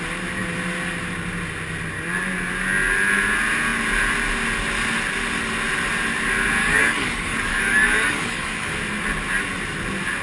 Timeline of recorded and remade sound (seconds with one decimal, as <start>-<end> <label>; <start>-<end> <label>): 0.0-6.6 recorded; 6.6-8.7 remade; 8.7-10.2 recorded